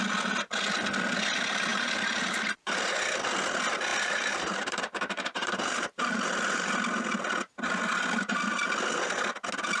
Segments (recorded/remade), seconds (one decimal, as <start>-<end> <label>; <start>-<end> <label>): 0.0-1.7 recorded; 1.7-2.9 remade; 2.9-3.9 recorded; 3.9-6.7 remade; 6.7-9.8 recorded